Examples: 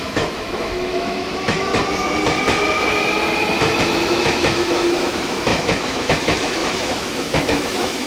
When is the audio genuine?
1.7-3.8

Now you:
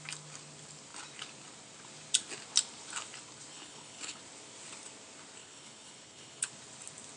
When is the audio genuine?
0.0-3.5; 4.2-5.4; 6.5-7.2

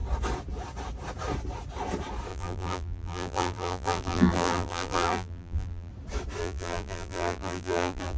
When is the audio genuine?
0.0-2.3; 5.9-6.4

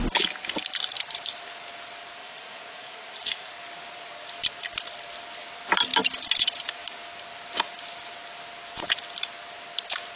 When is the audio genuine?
0.0-2.2; 3.5-10.2

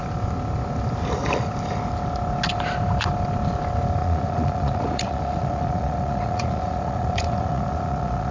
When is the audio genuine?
0.0-4.0

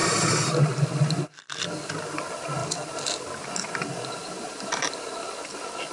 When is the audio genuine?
0.0-2.6; 3.5-4.2; 5.0-5.9

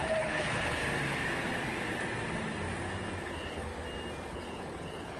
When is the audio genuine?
0.8-3.2; 3.7-4.3